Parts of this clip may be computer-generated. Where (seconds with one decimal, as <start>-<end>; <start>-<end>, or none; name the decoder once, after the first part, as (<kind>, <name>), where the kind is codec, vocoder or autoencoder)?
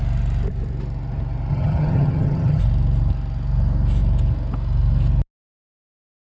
1.5-2.6 (vocoder, HiFi-GAN)